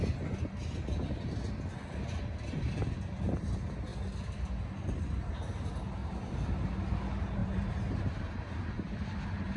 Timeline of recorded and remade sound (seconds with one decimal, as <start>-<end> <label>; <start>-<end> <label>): 0.0-6.0 recorded; 6.0-6.9 remade; 6.9-7.4 recorded; 7.4-9.6 remade